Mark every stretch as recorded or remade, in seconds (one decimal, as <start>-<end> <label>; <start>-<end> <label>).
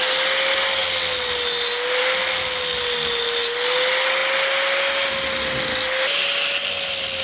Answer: 0.0-7.2 recorded